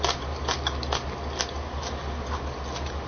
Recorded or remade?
recorded